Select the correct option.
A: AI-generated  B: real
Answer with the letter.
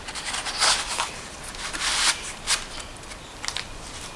B